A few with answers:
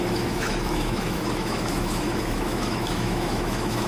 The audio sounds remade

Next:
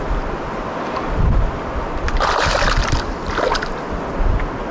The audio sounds recorded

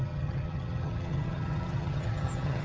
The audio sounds remade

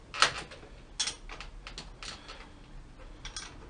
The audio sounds recorded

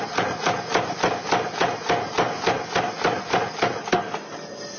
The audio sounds recorded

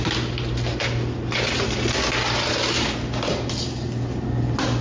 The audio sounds recorded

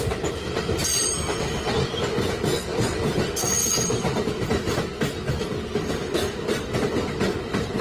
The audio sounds recorded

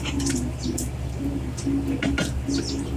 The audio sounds recorded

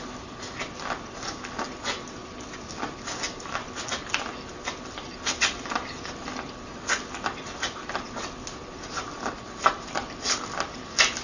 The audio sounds recorded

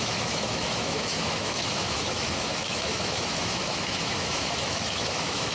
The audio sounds remade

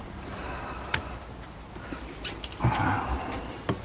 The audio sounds recorded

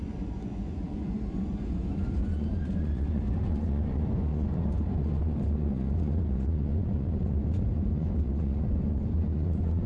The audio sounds remade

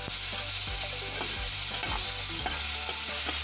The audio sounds recorded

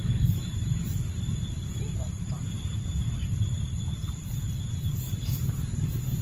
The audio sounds remade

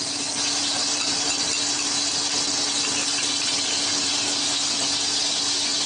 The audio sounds recorded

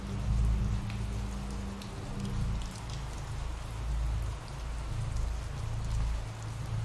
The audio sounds recorded